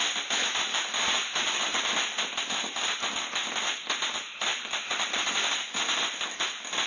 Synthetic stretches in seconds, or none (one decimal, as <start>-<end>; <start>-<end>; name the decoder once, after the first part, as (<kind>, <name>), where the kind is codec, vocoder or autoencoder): 0.7-2.8 (vocoder, BigVGAN v2); 4.5-5.2